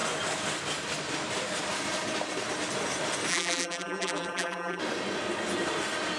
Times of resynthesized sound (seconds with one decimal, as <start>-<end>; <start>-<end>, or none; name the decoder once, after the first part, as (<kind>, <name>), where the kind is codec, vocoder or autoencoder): 3.3-4.8 (vocoder, BigVGAN v2)